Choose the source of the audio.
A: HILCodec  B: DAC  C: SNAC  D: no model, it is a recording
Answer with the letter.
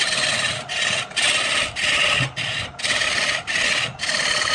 D